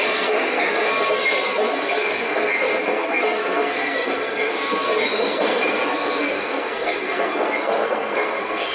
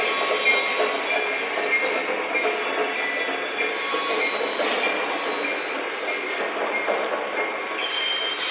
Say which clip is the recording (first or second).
second